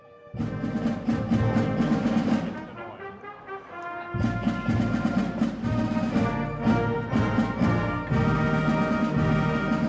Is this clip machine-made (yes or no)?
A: no